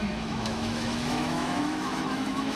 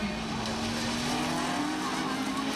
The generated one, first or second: first